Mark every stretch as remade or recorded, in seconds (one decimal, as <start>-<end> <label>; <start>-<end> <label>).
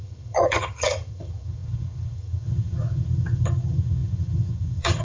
0.0-5.0 remade